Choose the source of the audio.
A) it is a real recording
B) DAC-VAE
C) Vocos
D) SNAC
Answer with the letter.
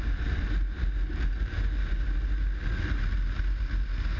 A